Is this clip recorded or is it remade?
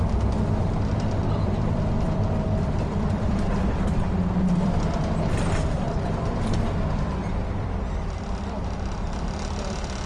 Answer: remade